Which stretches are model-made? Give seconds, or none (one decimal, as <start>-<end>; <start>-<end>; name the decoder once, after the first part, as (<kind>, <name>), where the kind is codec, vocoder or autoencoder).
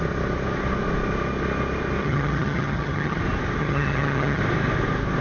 2.0-3.2 (vocoder, HiFi-GAN); 3.6-4.4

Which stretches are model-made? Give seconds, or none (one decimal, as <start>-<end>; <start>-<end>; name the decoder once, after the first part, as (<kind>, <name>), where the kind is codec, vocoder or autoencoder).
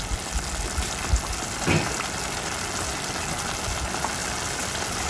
none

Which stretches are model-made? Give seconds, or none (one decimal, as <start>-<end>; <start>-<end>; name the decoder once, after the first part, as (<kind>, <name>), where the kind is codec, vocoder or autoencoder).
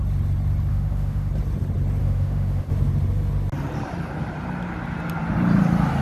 0.7-1.3 (autoencoder, DAC-VAE); 2.0-2.7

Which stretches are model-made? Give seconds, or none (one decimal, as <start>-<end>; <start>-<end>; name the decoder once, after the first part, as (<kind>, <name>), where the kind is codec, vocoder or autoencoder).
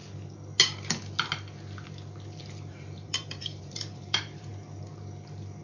2.7-4.5 (vocoder, BigVGAN v2)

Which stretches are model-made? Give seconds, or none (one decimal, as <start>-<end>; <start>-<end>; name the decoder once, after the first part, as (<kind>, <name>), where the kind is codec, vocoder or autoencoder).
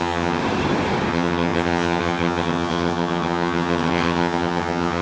0.0-0.4 (vocoder, HiFi-GAN); 1.1-5.0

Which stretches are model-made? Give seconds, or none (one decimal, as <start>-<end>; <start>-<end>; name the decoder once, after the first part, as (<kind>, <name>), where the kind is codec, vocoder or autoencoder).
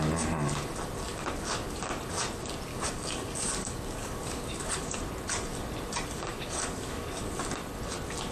1.1-1.8 (codec, DAC); 2.7-5.0; 6.3-7.3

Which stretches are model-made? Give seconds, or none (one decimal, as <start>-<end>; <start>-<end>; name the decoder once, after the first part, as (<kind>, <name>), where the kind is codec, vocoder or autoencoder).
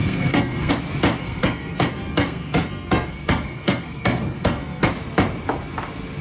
0.0-0.7 (codec, SNAC); 1.2-4.9